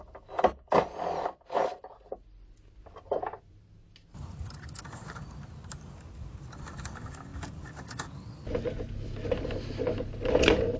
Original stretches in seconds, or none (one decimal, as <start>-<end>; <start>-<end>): 0.0-10.8